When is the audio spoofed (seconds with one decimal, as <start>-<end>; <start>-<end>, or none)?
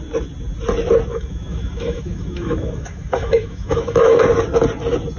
1.1-4.2